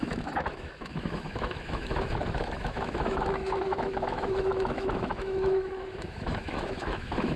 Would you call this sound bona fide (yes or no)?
no